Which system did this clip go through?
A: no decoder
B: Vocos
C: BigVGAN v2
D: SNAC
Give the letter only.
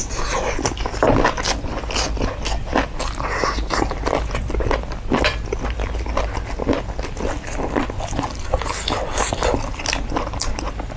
A